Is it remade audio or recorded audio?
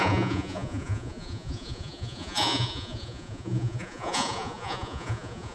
remade